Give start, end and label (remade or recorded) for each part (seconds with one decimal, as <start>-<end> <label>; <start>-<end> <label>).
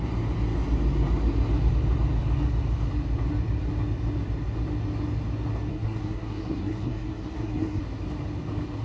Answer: 0.0-5.7 recorded; 5.7-7.8 remade; 7.8-8.8 recorded